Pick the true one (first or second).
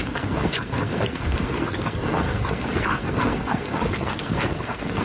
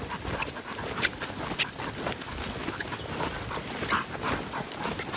second